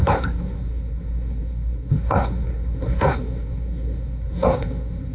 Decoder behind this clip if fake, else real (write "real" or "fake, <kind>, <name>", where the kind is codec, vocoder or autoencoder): fake, codec, SNAC